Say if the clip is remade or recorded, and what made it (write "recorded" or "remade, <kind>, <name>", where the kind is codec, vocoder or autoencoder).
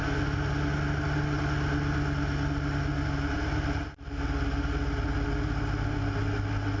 recorded